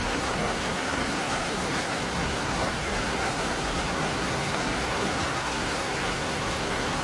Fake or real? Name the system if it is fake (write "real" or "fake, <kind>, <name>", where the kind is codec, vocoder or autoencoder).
fake, codec, SNAC